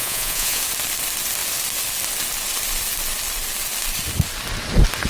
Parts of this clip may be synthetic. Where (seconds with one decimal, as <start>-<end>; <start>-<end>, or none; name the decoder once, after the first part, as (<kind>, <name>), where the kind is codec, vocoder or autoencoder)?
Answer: 0.0-0.6 (vocoder, Vocos)